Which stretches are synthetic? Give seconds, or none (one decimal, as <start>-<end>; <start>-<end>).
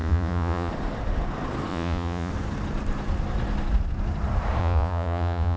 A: 0.0-0.7; 1.7-2.3; 4.6-5.6